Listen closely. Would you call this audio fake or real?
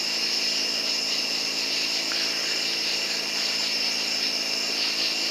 fake